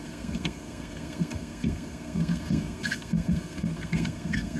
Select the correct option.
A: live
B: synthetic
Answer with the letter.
B